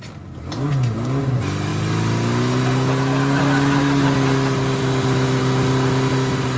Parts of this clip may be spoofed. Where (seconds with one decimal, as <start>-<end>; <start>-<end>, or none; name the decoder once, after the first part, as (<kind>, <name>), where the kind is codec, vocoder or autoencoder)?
none